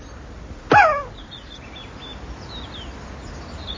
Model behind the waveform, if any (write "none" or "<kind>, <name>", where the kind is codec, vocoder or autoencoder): none